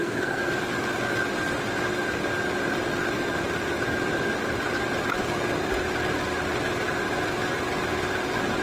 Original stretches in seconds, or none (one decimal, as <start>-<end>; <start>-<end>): 0.5-8.6